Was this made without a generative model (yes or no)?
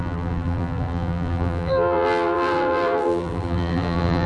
no